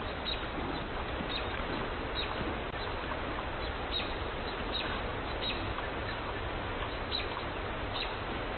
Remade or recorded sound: recorded